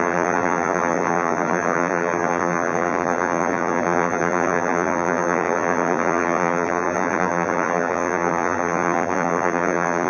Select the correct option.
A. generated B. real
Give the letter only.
A